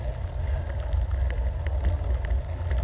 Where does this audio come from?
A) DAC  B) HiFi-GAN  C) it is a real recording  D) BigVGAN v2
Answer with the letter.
C